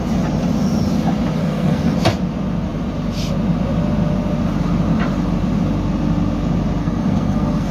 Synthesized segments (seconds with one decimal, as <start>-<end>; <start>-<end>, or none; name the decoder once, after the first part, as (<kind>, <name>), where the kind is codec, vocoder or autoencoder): 1.4-1.9 (codec, SNAC); 6.8-7.7